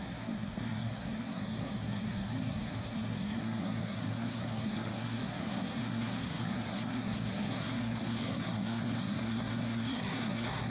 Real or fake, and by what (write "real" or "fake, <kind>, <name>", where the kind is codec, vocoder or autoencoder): fake, codec, SNAC